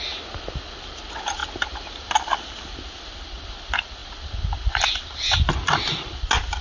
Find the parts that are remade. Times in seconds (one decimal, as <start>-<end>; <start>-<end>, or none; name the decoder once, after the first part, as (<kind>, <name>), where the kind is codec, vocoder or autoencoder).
none